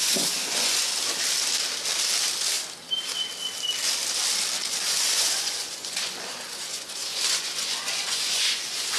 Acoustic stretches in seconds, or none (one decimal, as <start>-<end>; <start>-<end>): 0.9-4.7